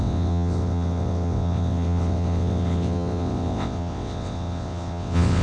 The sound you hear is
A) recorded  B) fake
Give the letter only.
B